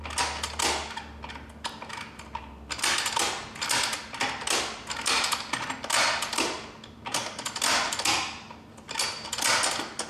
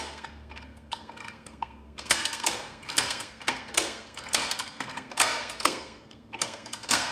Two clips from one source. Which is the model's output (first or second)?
second